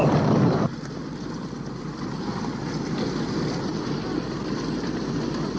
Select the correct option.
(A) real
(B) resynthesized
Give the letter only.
A